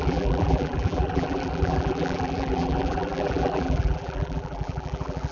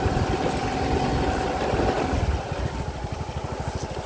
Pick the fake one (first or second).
first